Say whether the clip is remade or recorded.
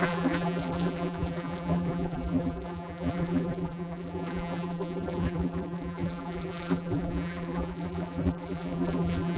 remade